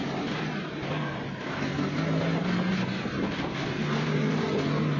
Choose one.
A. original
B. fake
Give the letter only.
A